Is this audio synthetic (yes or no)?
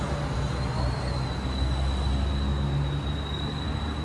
no